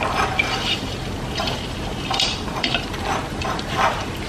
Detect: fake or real fake